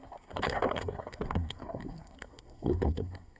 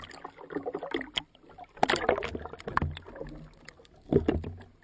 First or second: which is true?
second